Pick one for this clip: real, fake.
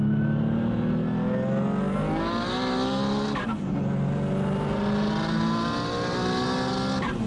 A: real